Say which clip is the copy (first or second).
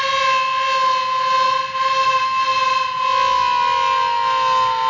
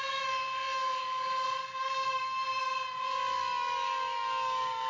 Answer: second